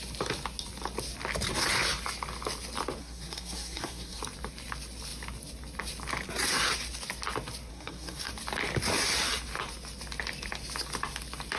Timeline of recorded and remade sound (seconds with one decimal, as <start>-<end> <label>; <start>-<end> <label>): 0.0-3.0 recorded; 3.0-4.2 remade; 4.2-7.7 recorded; 7.7-8.3 remade; 8.3-11.6 recorded